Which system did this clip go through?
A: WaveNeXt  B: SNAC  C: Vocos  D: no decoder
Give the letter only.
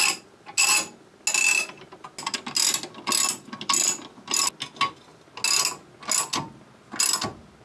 D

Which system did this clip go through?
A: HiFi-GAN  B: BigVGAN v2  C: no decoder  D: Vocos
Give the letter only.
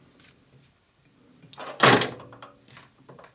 C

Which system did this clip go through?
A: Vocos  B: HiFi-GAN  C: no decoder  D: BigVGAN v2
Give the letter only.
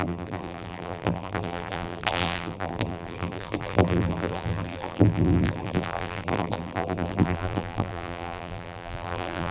D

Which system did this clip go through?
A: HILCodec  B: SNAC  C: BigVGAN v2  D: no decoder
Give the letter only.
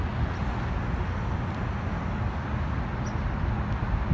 D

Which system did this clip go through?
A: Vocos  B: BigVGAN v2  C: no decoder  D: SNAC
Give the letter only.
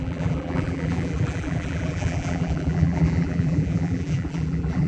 B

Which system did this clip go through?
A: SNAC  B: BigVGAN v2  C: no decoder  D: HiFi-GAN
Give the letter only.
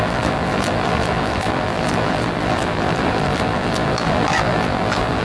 B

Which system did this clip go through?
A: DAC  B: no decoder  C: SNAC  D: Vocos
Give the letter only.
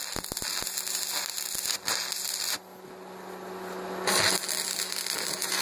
B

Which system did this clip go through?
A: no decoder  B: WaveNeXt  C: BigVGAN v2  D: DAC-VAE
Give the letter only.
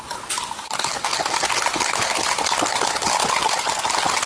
A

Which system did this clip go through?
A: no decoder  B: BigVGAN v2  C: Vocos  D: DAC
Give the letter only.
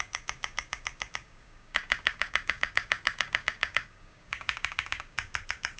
D